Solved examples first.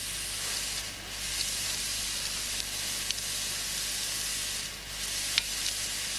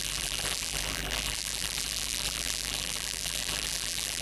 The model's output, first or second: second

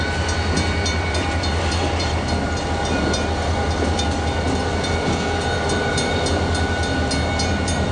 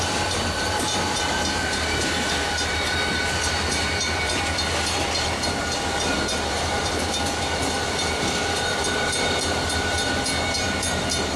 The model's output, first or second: second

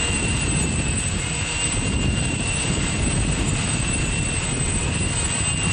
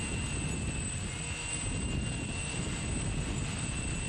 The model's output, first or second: first